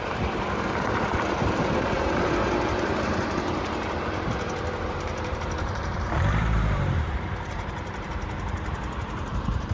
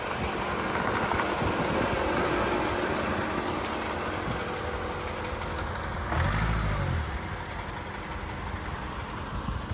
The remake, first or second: first